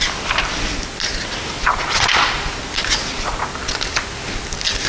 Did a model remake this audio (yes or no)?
no